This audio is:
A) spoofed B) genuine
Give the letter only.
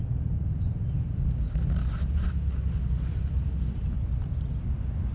B